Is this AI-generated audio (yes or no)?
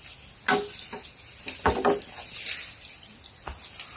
no